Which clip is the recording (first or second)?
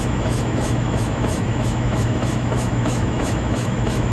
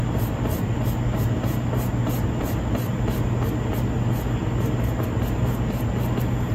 second